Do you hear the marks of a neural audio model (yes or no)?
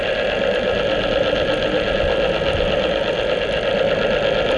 no